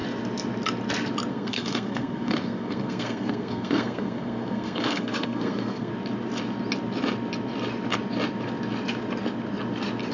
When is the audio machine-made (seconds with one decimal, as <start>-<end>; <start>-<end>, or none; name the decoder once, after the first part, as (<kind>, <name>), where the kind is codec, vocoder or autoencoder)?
1.3-5.9 (codec, SNAC)